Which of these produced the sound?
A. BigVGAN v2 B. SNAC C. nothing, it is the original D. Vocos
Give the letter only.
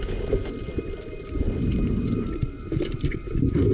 C